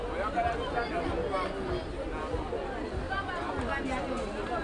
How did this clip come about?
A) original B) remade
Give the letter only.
A